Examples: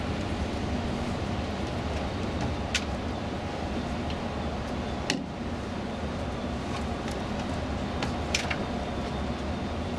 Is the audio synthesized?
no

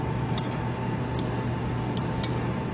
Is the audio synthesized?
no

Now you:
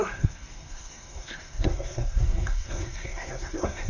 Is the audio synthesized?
yes